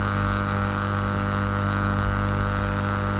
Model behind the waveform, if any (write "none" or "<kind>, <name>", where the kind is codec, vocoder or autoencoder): codec, DAC